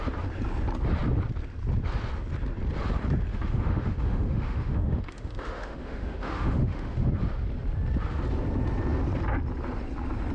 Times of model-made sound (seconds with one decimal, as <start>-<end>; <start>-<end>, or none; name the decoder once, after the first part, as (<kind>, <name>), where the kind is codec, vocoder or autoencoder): 3.3-7.1 (autoencoder, DAC-VAE)